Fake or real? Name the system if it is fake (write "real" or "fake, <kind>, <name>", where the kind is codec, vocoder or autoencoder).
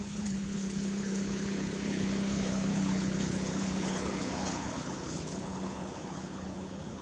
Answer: fake, codec, HILCodec